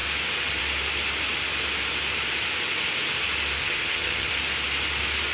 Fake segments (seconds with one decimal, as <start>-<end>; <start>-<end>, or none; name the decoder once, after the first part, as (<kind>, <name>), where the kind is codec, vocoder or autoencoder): 3.6-4.3 (vocoder, HiFi-GAN)